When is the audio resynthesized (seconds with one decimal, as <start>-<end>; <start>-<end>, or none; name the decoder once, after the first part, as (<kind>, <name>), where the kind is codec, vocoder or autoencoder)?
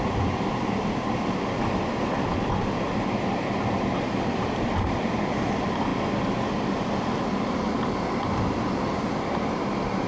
0.0-5.9 (vocoder, BigVGAN v2); 6.4-10.1